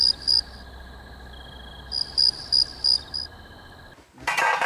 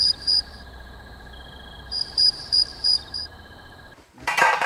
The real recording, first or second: first